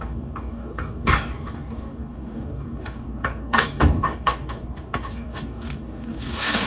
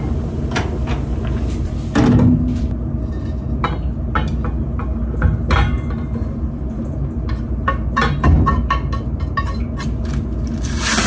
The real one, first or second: second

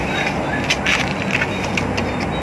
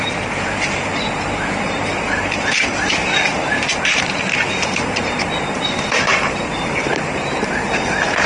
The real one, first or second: first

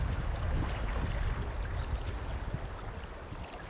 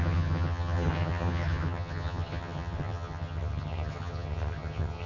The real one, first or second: first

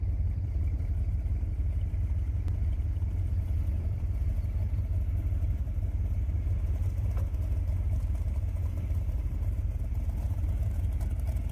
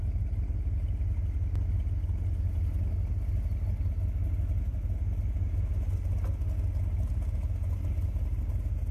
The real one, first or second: second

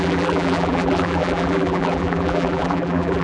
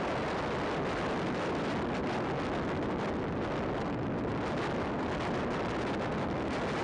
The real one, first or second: second